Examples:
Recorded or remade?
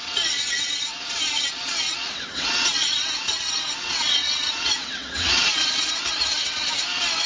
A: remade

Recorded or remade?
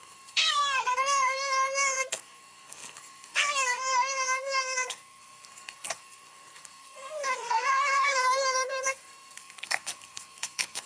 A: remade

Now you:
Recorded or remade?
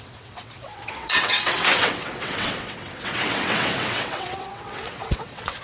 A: remade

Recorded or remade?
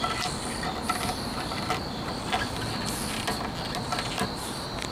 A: recorded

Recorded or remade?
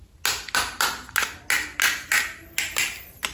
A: recorded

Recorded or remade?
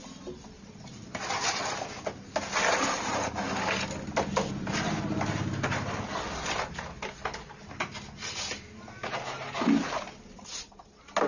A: recorded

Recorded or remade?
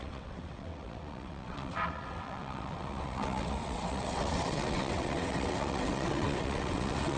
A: remade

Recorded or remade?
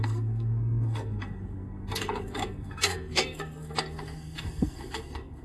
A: remade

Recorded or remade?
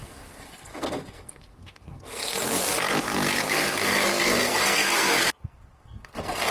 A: remade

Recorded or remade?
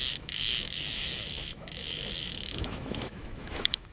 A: remade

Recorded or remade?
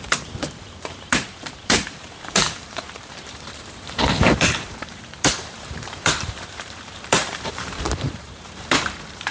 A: remade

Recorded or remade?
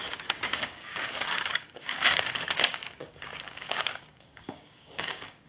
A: remade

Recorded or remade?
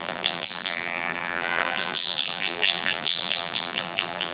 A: remade